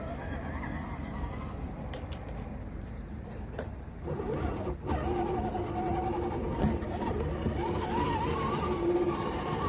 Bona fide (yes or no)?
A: no